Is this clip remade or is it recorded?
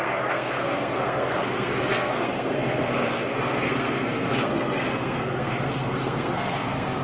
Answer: remade